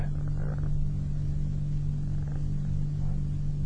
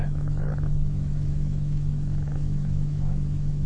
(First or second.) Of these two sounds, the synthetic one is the second